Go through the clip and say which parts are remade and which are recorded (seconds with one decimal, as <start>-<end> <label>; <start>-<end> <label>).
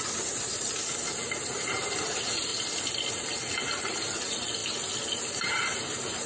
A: 0.0-2.5 remade; 2.5-3.1 recorded; 3.1-4.6 remade; 4.6-5.2 recorded; 5.2-6.3 remade